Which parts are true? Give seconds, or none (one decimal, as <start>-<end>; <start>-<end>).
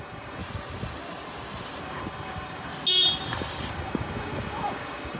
0.4-1.8; 2.7-3.7